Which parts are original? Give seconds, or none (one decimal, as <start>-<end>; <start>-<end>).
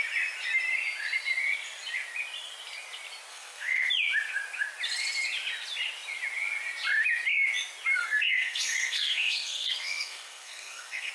0.0-3.3; 3.9-8.0